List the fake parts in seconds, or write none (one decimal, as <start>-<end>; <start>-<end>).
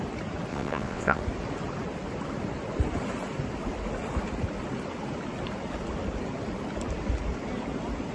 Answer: 0.5-1.2